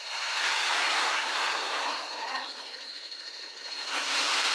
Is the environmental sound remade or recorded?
remade